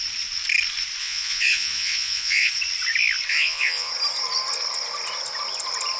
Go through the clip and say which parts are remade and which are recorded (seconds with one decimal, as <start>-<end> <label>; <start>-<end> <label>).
0.0-1.0 recorded; 1.0-2.5 remade; 2.5-3.3 recorded; 3.3-3.9 remade; 3.9-6.0 recorded